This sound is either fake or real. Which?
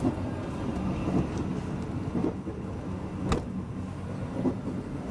real